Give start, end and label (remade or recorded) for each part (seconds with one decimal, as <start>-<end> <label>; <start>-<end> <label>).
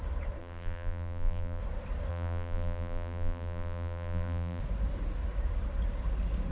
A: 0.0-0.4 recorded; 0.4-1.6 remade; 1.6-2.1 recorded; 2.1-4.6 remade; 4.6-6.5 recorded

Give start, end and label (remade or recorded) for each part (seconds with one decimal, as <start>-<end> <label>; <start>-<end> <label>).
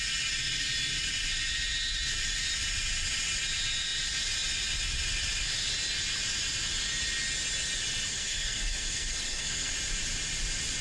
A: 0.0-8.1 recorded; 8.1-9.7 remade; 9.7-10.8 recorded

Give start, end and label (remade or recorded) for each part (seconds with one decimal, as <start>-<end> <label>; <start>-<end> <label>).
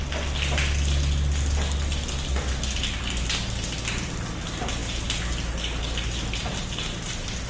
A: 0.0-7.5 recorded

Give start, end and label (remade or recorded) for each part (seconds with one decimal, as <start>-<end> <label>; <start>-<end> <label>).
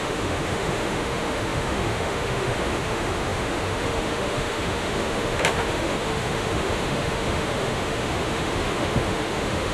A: 0.0-9.7 remade